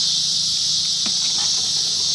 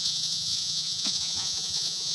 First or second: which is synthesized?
second